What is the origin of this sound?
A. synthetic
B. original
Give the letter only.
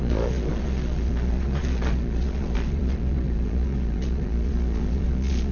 A